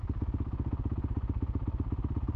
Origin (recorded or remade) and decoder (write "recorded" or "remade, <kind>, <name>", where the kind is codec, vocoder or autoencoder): recorded